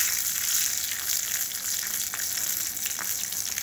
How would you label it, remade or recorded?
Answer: recorded